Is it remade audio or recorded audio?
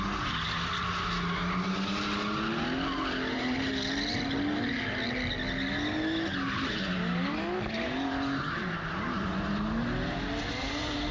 recorded